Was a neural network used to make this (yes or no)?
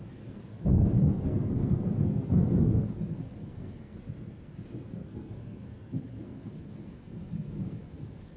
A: yes